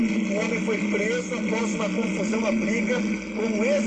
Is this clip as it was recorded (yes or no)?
yes